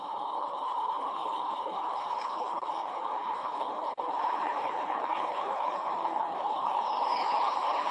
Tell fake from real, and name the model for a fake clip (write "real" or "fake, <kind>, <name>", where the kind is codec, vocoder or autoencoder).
fake, codec, HILCodec